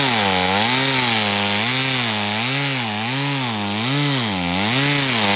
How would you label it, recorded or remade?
recorded